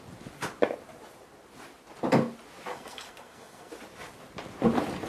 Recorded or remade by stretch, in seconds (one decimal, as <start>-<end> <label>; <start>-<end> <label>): 0.0-2.7 recorded; 2.7-3.7 remade; 3.7-5.1 recorded